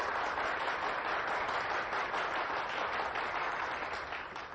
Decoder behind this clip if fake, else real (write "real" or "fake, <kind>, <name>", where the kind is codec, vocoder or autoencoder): real